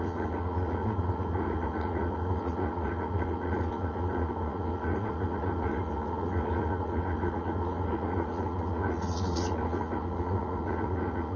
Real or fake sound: fake